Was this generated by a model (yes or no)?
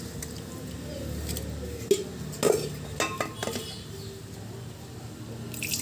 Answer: no